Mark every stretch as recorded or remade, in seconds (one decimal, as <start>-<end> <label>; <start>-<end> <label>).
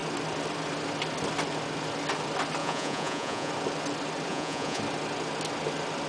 0.0-2.6 recorded; 2.6-3.5 remade; 3.5-4.3 recorded; 4.3-4.8 remade; 4.8-6.1 recorded